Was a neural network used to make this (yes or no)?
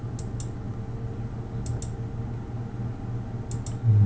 no